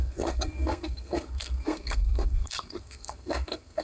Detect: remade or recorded remade